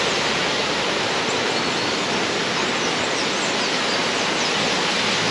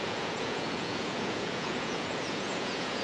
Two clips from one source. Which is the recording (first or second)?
first